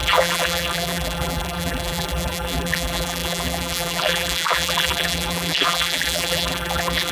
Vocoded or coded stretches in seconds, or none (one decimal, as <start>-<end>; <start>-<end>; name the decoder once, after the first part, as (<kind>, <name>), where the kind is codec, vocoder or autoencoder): 0.0-7.1 (vocoder, BigVGAN v2)